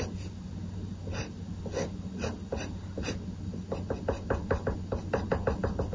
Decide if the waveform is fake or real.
real